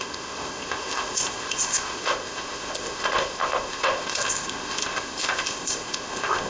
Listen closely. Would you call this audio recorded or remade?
remade